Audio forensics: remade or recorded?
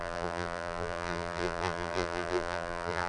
remade